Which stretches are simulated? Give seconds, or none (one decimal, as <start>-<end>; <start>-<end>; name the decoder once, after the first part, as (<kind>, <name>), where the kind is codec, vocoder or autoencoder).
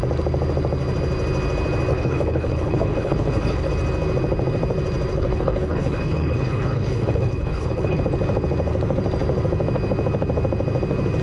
1.9-3.7 (codec, HILCodec); 5.1-8.0